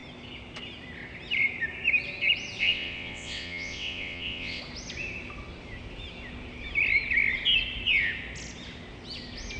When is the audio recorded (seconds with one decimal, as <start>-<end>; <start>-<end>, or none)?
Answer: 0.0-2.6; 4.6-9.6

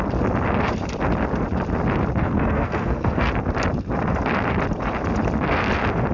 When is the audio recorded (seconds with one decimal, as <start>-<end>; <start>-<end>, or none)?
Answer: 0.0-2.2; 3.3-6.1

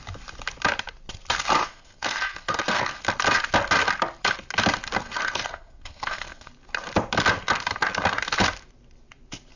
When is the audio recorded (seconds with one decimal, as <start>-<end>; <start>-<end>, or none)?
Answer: 0.0-1.6; 3.0-5.0; 6.5-9.6